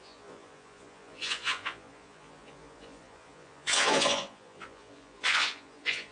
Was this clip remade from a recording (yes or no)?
yes